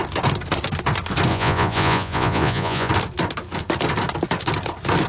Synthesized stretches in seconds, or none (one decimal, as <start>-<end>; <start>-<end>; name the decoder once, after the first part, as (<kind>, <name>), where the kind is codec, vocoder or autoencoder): 1.3-2.9 (vocoder, Vocos)